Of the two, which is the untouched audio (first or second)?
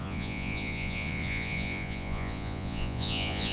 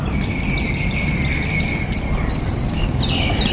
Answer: second